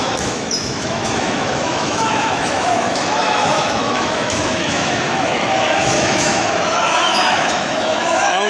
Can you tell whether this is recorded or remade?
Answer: remade